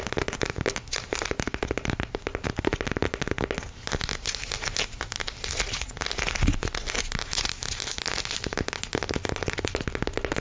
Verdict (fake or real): real